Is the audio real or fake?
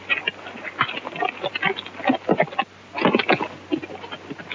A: real